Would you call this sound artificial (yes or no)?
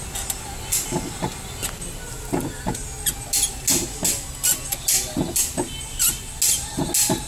no